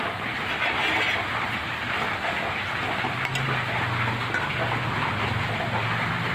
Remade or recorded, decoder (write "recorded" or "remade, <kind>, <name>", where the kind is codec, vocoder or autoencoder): recorded